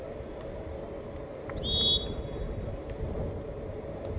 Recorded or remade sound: recorded